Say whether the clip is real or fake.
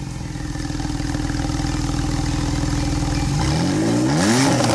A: real